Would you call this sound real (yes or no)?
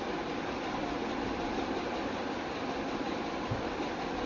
yes